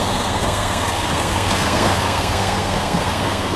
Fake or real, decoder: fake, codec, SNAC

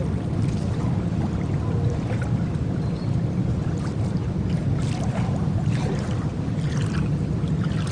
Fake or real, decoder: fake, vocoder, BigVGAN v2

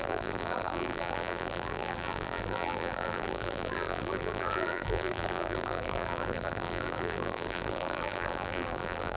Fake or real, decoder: fake, vocoder, BigVGAN v2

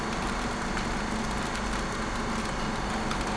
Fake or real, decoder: real